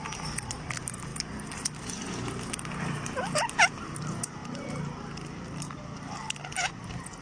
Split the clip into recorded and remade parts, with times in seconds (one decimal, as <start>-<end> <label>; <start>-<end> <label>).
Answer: 0.0-7.2 recorded